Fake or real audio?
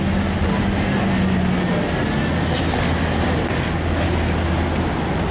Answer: real